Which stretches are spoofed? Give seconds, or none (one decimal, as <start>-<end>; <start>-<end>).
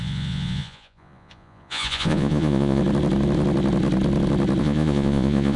0.0-2.8; 4.6-5.6